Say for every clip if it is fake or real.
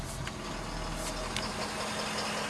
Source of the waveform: real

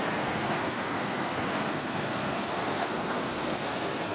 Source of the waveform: fake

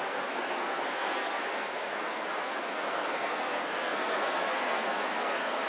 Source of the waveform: fake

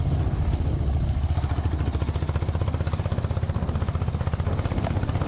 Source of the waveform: real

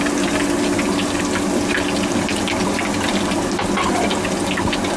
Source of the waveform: real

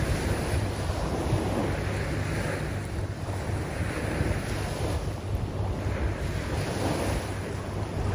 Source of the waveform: real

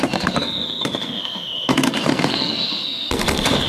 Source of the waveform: fake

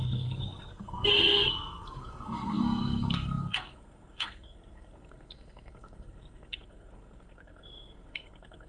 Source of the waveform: fake